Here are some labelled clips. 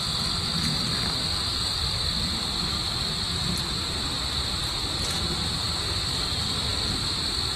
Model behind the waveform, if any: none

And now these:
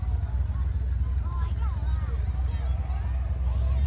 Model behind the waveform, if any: none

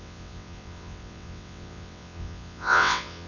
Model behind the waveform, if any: vocoder, WaveNeXt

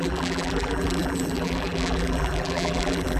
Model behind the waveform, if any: vocoder, BigVGAN v2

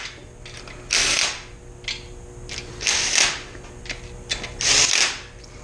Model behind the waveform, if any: none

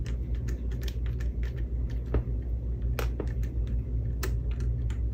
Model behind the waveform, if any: none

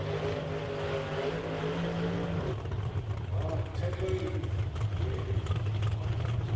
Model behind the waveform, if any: none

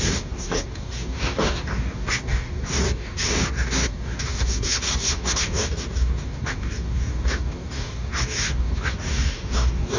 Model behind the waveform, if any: codec, DAC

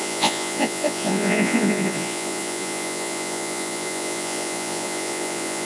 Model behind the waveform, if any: vocoder, Vocos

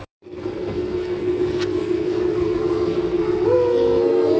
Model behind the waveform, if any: codec, SNAC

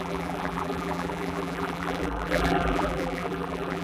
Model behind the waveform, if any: vocoder, BigVGAN v2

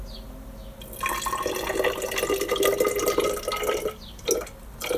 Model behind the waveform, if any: none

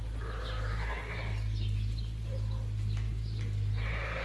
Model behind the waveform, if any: none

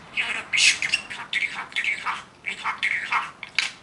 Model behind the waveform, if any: none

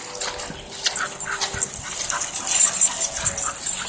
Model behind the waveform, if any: none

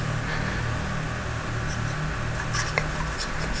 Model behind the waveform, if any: none